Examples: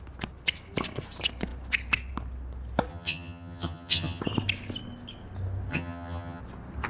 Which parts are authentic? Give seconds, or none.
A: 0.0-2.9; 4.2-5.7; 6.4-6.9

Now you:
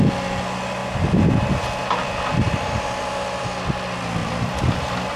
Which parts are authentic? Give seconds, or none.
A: 0.0-0.8; 1.4-1.8; 3.4-4.2; 4.8-5.2

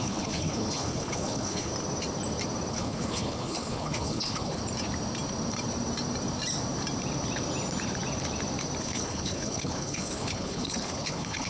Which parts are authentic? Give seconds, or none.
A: 1.7-2.7; 4.6-8.8

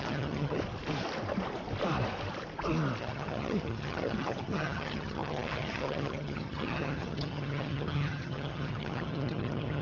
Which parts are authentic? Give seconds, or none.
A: 0.6-3.0

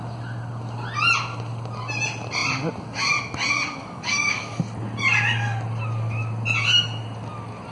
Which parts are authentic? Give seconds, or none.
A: 0.0-3.8; 4.6-7.7